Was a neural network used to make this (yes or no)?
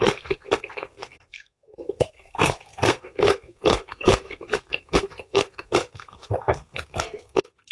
yes